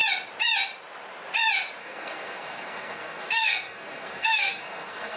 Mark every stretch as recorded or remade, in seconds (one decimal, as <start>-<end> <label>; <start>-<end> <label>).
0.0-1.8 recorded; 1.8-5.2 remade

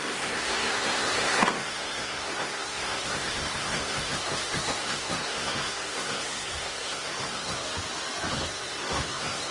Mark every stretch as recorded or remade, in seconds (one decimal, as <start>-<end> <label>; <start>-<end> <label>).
0.0-7.7 remade; 7.7-8.3 recorded; 8.3-9.5 remade

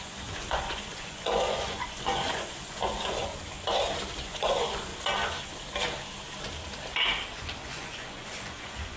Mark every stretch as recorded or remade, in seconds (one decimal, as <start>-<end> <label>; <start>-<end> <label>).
0.0-3.3 remade; 3.3-4.2 recorded; 4.2-4.9 remade; 4.9-7.3 recorded; 7.3-9.0 remade